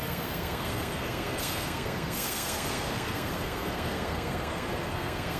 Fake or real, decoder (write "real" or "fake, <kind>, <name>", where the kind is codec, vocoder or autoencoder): fake, codec, SNAC